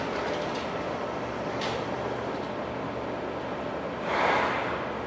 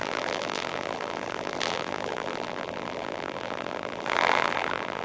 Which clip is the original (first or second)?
first